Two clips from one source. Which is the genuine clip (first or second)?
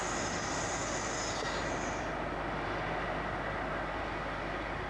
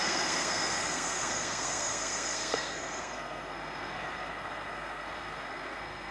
first